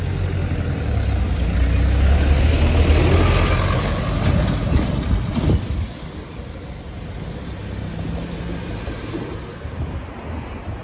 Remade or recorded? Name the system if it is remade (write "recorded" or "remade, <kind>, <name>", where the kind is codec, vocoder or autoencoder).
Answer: recorded